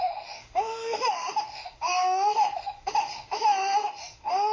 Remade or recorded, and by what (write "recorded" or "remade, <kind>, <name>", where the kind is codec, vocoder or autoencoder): remade, autoencoder, DAC-VAE